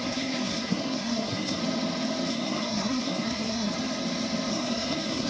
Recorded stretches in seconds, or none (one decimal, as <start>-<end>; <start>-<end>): 1.6-2.3; 3.7-4.5

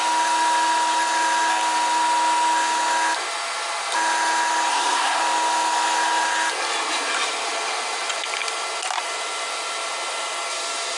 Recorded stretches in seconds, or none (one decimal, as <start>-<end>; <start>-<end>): 0.0-4.7; 5.2-11.0

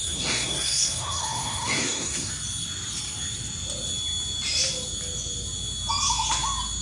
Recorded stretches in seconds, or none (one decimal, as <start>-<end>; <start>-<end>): 2.3-6.8